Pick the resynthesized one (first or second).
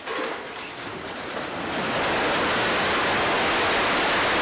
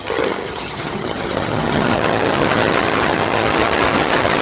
second